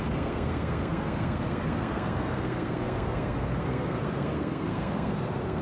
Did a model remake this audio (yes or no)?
yes